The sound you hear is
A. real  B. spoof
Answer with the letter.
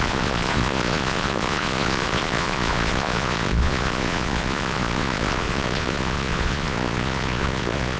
B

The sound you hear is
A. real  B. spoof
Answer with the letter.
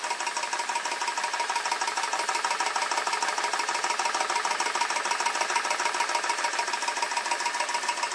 A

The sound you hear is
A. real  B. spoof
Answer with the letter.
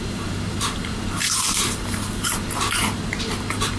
B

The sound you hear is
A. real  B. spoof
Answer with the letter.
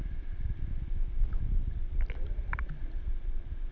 A